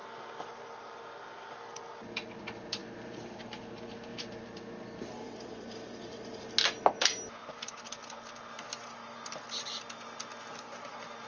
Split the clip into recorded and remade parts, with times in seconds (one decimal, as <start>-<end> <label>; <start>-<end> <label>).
0.0-1.0 remade; 1.0-2.8 recorded; 2.8-3.6 remade; 3.6-4.1 recorded; 4.1-6.4 remade; 6.4-7.4 recorded; 7.4-8.4 remade; 8.4-11.3 recorded